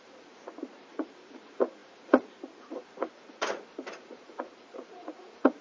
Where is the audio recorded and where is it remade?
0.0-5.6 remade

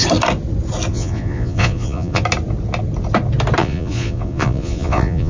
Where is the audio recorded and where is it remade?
0.0-0.9 recorded; 0.9-2.2 remade; 2.2-3.6 recorded; 3.6-5.3 remade